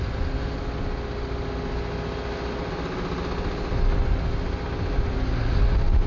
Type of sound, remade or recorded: recorded